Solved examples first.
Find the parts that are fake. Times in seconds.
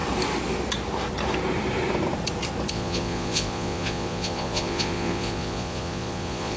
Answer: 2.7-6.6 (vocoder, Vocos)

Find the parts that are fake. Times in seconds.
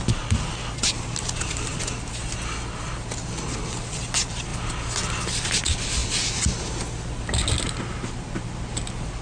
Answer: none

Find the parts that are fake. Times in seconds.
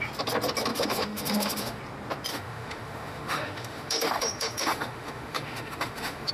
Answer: 0.7-1.8 (autoencoder, DAC-VAE); 2.3-6.3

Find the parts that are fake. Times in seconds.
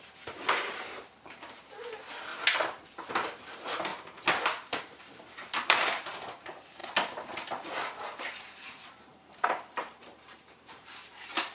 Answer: 0.0-2.3 (vocoder, BigVGAN v2); 3.1-3.9; 4.8-6.8; 8.4-11.5